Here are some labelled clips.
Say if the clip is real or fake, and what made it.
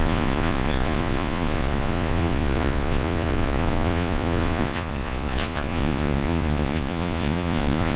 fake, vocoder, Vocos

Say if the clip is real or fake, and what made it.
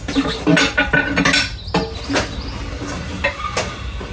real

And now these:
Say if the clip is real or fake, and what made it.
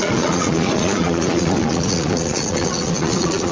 fake, vocoder, Vocos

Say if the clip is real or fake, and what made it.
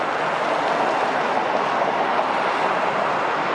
real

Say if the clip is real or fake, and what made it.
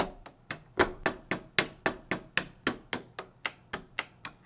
real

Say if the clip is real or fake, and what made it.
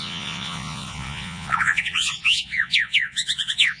fake, vocoder, Vocos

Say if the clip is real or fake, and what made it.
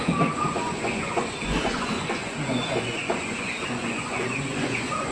fake, vocoder, Vocos